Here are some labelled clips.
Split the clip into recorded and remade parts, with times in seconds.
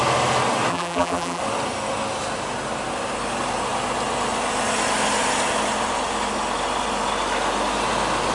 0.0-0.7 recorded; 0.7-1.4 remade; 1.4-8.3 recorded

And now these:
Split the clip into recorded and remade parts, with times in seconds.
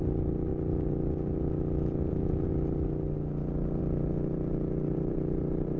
0.0-0.5 remade; 0.5-2.1 recorded; 2.1-2.5 remade; 2.5-3.8 recorded; 3.8-5.8 remade